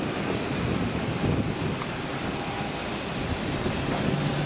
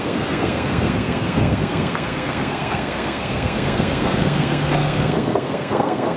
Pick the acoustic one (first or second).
first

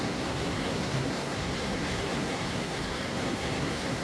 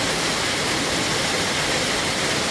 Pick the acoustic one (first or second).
second